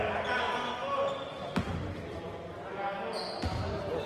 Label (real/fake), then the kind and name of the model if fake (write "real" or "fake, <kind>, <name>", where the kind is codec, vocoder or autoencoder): real